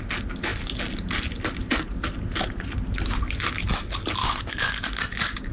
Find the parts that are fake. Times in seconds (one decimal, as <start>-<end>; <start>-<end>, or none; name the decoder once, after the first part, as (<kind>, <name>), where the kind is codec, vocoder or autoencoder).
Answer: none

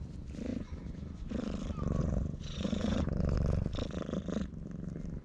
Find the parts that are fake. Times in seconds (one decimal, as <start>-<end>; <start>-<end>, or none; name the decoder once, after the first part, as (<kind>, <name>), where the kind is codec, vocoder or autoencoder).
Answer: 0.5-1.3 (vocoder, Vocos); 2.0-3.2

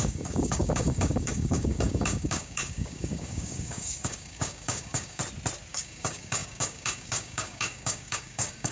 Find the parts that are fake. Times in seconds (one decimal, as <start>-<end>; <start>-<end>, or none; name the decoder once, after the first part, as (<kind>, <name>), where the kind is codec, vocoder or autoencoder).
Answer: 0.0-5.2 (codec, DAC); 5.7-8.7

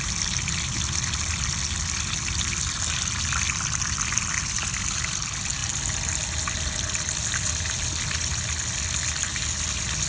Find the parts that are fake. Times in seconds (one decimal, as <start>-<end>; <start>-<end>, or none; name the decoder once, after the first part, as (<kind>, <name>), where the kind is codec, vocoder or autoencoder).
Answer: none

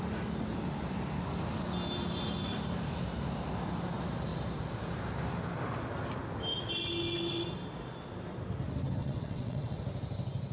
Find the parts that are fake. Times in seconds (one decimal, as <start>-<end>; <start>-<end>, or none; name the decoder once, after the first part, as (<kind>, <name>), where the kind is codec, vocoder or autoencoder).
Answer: 9.0-9.8 (vocoder, WaveNeXt)